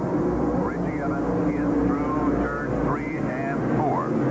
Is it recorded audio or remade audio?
recorded